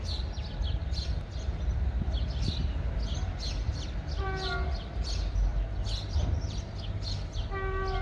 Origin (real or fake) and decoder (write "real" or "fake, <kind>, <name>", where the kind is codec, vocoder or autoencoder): real